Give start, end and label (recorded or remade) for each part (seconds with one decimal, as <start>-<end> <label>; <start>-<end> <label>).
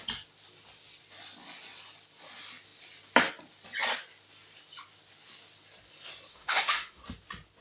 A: 0.0-6.3 recorded; 6.3-7.0 remade; 7.0-7.6 recorded